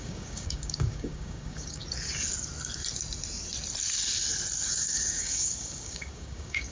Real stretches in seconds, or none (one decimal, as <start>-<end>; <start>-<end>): 1.8-4.7